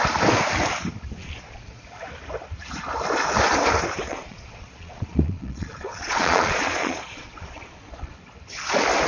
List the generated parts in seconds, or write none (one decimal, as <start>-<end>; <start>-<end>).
1.2-1.8; 4.1-8.1